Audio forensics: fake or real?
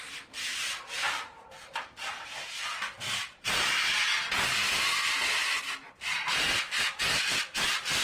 real